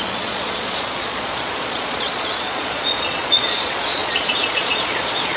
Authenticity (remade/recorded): remade